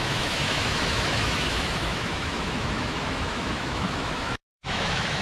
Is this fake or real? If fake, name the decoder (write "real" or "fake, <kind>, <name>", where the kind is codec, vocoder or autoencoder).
fake, autoencoder, DAC-VAE